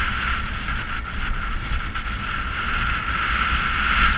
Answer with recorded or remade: recorded